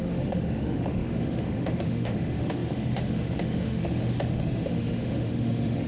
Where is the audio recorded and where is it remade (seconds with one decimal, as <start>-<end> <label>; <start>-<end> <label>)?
0.0-5.9 remade